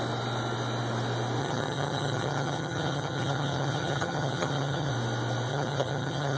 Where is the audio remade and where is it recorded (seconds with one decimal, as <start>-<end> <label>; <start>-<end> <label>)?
0.0-1.4 recorded; 1.4-4.9 remade; 4.9-5.5 recorded; 5.5-6.4 remade